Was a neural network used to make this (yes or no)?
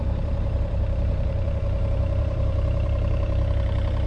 yes